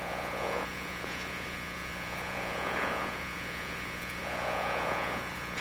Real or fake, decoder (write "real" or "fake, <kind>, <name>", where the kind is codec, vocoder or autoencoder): fake, vocoder, Vocos